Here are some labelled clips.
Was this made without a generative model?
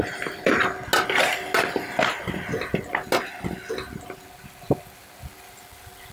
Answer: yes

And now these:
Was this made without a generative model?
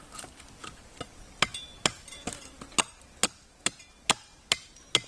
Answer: yes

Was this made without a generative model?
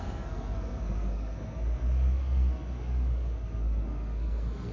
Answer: no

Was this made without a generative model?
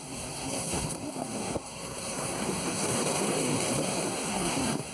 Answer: no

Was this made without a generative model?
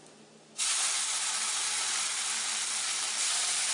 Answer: yes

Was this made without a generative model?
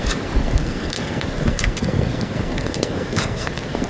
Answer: no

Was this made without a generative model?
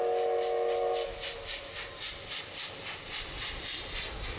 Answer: yes